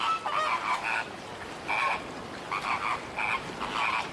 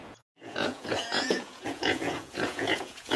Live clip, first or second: first